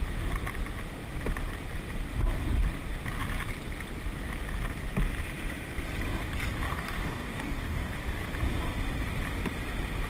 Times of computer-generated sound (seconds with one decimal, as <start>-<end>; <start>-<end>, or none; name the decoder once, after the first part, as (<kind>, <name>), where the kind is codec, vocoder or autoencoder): 6.7-7.9 (codec, DAC)